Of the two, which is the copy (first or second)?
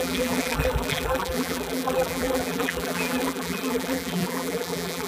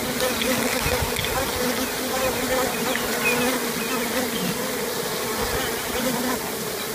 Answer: first